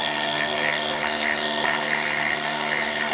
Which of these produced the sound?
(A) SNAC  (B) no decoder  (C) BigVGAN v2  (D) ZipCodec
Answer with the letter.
A